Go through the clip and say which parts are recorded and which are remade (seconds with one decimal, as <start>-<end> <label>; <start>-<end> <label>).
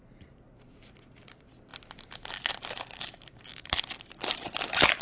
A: 0.0-5.0 recorded